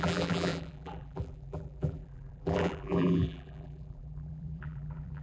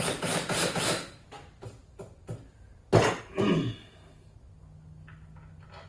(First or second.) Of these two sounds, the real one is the second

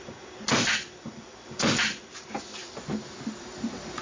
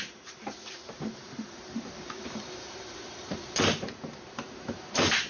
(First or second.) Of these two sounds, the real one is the first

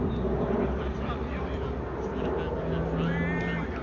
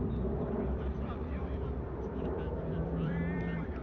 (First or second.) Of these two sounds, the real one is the first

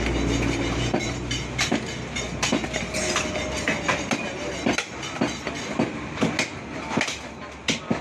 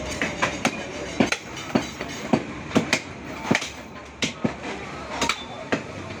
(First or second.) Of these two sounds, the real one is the first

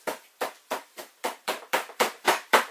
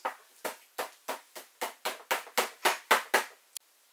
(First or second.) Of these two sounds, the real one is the second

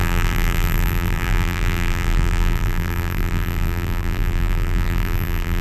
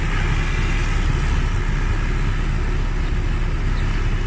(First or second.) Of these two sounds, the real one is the second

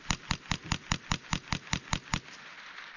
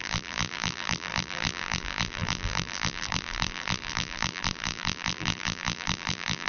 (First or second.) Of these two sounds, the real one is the first